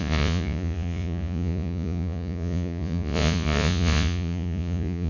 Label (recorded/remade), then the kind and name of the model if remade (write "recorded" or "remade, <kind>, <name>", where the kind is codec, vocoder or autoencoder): remade, vocoder, Vocos